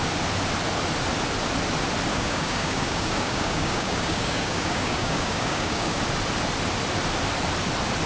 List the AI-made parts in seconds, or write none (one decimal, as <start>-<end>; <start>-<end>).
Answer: 2.1-6.0